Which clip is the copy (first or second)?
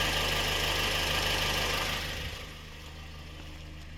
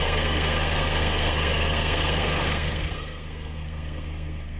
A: second